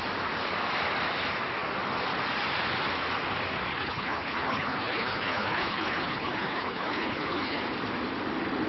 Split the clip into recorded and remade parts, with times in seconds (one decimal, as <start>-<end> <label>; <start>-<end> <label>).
0.0-3.7 recorded; 3.7-7.6 remade; 7.6-8.7 recorded